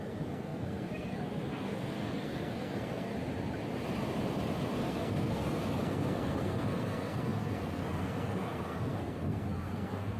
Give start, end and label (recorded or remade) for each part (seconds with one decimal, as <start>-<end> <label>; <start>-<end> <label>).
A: 0.0-3.1 remade; 3.1-4.7 recorded; 4.7-10.2 remade